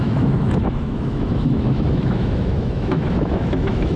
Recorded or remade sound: remade